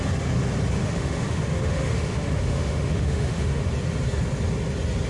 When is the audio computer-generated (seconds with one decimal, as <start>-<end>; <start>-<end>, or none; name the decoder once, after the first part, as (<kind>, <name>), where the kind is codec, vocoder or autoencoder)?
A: 0.8-3.7 (autoencoder, DAC-VAE)